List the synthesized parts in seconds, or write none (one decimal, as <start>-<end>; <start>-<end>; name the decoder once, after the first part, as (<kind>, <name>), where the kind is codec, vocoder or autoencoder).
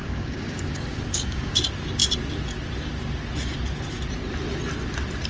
0.0-1.6 (codec, DAC)